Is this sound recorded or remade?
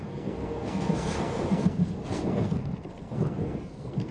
remade